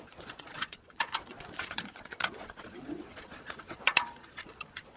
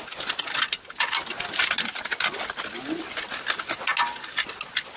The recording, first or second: second